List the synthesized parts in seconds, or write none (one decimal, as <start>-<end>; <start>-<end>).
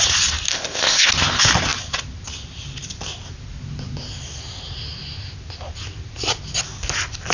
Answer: 0.5-1.1